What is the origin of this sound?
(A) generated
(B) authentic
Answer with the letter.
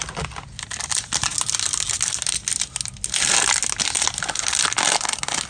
B